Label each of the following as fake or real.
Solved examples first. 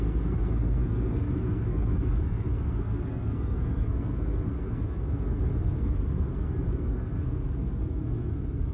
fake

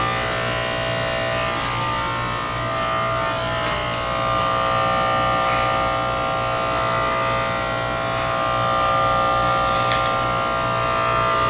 real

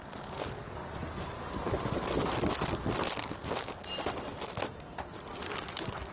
real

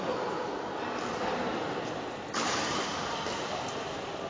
real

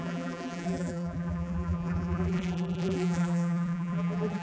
fake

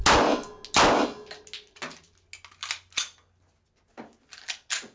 real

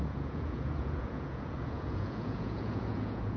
fake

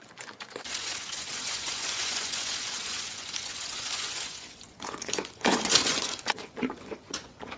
fake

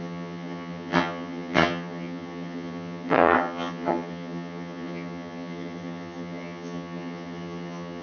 fake